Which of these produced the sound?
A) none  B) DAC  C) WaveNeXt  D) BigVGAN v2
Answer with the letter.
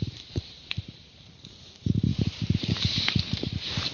D